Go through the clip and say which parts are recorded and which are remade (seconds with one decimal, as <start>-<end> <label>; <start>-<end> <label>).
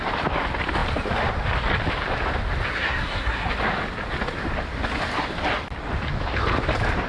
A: 0.0-2.7 recorded; 2.7-3.5 remade; 3.5-7.1 recorded